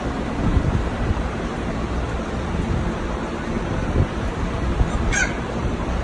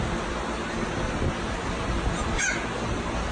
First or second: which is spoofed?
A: first